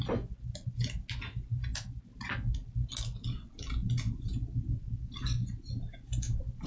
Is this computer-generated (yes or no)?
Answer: no